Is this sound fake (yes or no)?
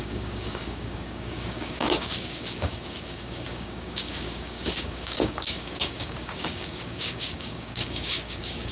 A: yes